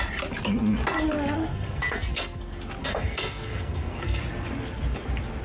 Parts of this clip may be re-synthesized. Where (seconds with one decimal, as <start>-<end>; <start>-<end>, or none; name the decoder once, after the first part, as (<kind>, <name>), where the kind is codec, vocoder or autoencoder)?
1.5-2.4 (codec, SNAC); 2.8-4.2